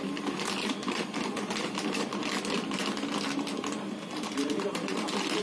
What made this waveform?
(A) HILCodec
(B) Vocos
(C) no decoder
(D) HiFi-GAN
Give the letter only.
C